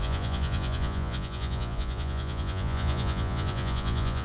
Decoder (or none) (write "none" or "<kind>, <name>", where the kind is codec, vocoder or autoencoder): vocoder, Vocos